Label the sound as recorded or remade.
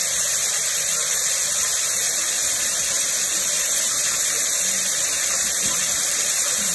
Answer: remade